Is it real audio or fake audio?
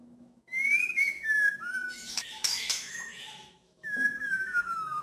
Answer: fake